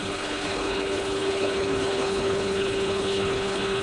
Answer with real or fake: fake